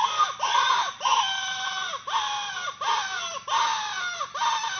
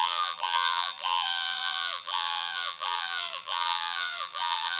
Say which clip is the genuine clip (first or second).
first